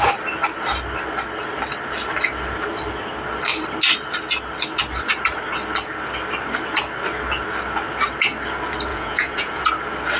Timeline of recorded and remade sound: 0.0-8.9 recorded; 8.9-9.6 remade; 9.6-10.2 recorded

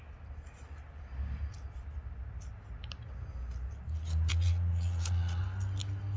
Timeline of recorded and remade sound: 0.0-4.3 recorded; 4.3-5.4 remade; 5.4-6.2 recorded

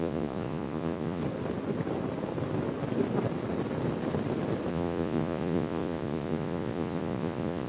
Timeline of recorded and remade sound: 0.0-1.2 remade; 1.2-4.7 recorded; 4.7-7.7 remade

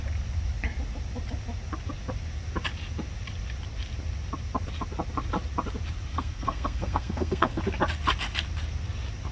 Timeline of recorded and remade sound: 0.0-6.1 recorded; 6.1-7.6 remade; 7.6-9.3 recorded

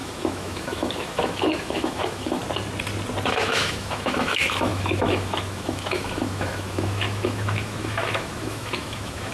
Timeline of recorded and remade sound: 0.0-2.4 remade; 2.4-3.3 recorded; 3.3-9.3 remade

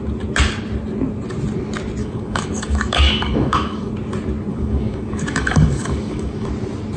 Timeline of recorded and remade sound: 0.0-2.0 recorded; 2.0-3.9 remade; 3.9-4.5 recorded; 4.5-6.5 remade; 6.5-7.0 recorded

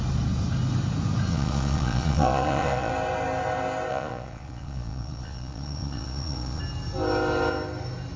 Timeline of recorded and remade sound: 0.0-1.3 recorded; 1.3-2.9 remade; 2.9-3.9 recorded; 3.9-6.6 remade; 6.6-8.2 recorded